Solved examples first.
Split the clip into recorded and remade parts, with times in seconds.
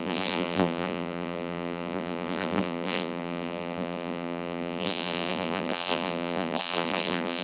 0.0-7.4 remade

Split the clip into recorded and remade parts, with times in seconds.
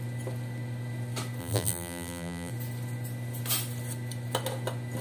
0.0-1.4 recorded; 1.4-2.5 remade; 2.5-5.0 recorded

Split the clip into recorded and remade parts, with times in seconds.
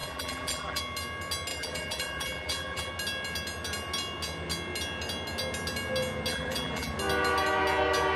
0.0-0.8 remade; 0.8-1.5 recorded; 1.5-2.9 remade; 2.9-6.3 recorded; 6.3-6.9 remade; 6.9-8.2 recorded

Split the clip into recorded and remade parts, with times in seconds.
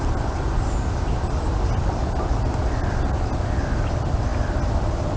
0.0-5.2 recorded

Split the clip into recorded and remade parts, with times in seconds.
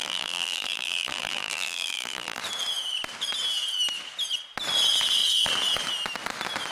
0.0-2.4 remade; 2.4-6.7 recorded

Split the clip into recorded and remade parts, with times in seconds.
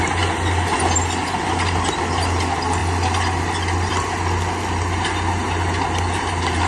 0.0-6.7 recorded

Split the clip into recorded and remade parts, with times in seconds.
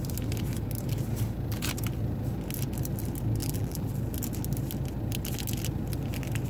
0.0-3.4 recorded; 3.4-3.9 remade; 3.9-6.5 recorded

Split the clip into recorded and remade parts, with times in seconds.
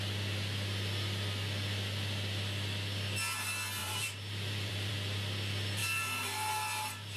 0.0-3.8 recorded; 3.8-4.9 remade; 4.9-5.8 recorded; 5.8-7.2 remade